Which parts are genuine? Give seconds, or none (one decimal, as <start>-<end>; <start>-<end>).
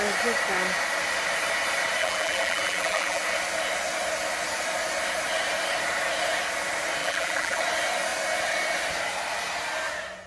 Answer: 0.0-2.0; 3.2-7.0; 7.6-10.3